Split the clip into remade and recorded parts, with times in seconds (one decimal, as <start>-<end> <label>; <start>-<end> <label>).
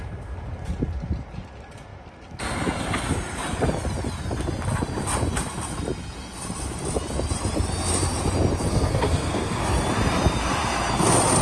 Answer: 0.0-8.7 recorded; 8.7-9.6 remade; 9.6-11.4 recorded